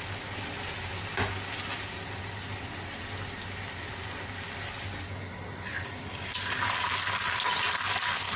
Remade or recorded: recorded